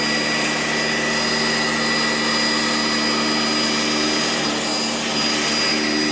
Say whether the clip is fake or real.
real